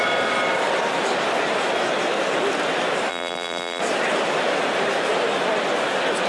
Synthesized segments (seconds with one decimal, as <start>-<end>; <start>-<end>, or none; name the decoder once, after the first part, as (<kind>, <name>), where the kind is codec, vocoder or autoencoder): 3.1-3.8 (vocoder, BigVGAN v2)